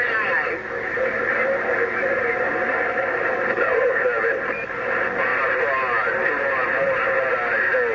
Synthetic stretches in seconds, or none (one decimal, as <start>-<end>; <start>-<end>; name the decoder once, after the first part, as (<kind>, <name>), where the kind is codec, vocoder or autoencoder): 1.3-2.2 (vocoder, BigVGAN v2)